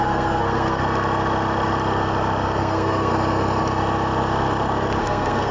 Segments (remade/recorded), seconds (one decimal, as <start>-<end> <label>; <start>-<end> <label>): 0.0-0.8 remade; 0.8-2.6 recorded; 2.6-3.1 remade; 3.1-5.0 recorded; 5.0-5.5 remade